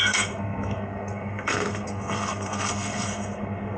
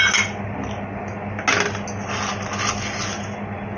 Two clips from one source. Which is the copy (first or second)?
first